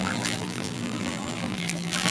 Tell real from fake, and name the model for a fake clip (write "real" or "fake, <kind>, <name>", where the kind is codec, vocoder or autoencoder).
fake, vocoder, BigVGAN v2